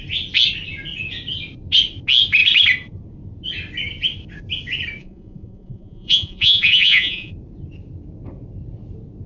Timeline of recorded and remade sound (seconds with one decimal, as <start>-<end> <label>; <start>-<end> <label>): 0.0-5.0 recorded; 5.0-7.3 remade; 7.3-9.3 recorded